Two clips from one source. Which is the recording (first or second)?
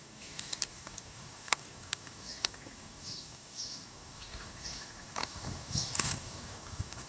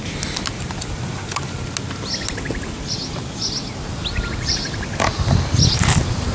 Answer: second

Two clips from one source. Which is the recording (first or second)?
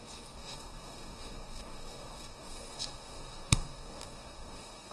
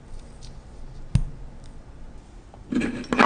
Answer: second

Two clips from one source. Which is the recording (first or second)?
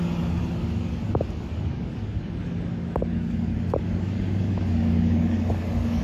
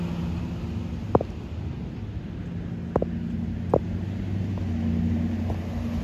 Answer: second